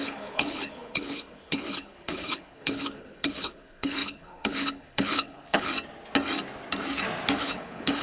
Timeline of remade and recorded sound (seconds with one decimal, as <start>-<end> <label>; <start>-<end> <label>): 0.0-5.7 remade; 5.7-7.4 recorded; 7.4-8.0 remade